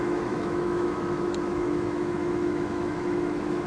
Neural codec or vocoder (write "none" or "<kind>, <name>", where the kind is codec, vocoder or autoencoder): autoencoder, DAC-VAE